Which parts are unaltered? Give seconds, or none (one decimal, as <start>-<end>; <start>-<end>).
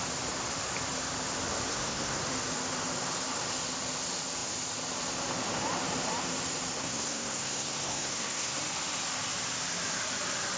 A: 0.0-1.7; 2.2-6.8; 8.6-10.6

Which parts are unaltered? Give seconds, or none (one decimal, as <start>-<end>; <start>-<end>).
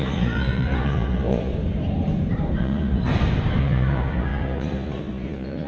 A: 1.5-2.6; 3.1-3.6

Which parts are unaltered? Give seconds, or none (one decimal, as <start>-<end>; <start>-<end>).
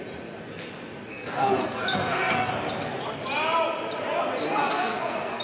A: 0.0-1.1; 2.5-4.5